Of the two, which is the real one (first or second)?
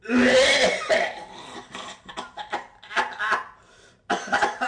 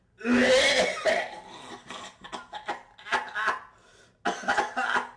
second